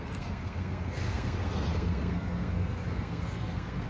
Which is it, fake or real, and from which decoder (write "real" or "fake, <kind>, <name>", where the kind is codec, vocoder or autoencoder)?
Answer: fake, codec, SNAC